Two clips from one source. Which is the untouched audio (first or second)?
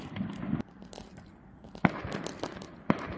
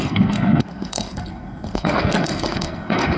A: first